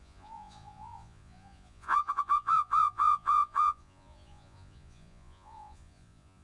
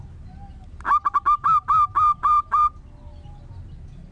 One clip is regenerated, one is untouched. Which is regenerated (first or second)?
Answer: first